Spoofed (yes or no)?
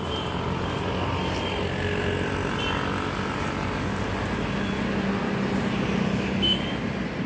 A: no